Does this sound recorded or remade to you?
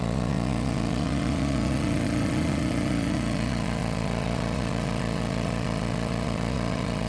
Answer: remade